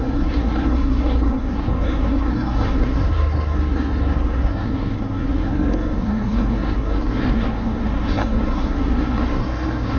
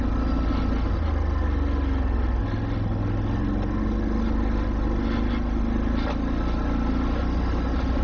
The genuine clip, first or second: second